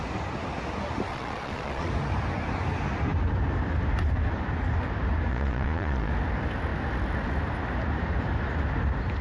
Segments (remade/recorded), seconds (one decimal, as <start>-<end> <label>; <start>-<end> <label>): 0.0-1.1 recorded; 1.1-1.9 remade; 1.9-5.3 recorded; 5.3-6.1 remade; 6.1-9.2 recorded

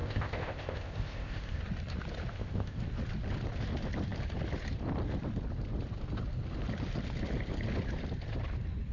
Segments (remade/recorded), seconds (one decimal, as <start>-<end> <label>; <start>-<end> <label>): 0.0-1.6 remade; 1.6-2.3 recorded; 2.3-2.8 remade; 2.8-8.9 recorded

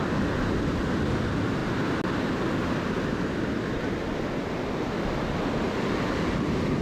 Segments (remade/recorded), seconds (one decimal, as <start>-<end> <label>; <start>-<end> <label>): 0.0-6.8 recorded

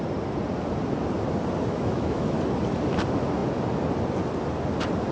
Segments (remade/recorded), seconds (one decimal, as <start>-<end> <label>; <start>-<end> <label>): 0.0-1.7 recorded; 1.7-2.4 remade; 2.4-5.1 recorded

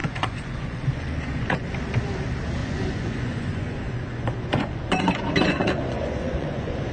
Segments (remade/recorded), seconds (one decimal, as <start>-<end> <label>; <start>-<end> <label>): 0.0-1.7 remade; 1.7-2.6 recorded; 2.6-6.9 remade

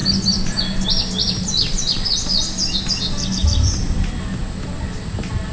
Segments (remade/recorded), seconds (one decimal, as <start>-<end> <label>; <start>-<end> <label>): 0.0-5.5 recorded

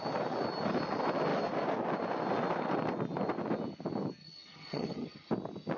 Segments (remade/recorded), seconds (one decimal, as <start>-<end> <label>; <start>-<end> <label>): 0.0-4.2 recorded; 4.2-5.3 remade; 5.3-5.8 recorded